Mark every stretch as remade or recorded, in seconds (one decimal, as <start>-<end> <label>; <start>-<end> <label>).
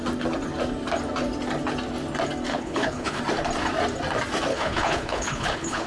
0.0-2.5 recorded; 2.5-3.2 remade; 3.2-4.5 recorded; 4.5-5.9 remade